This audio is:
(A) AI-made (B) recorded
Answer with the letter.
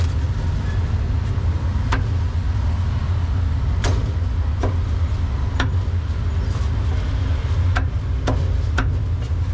B